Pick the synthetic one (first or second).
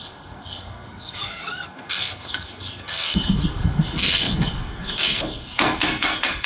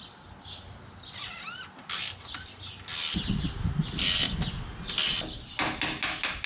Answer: first